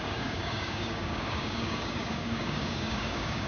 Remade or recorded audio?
remade